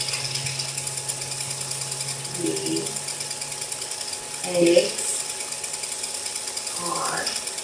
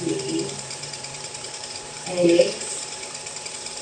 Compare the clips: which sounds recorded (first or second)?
first